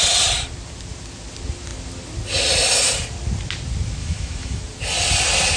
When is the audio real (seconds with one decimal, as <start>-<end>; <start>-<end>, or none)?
0.0-4.0; 4.6-5.6